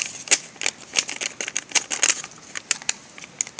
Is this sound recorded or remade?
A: recorded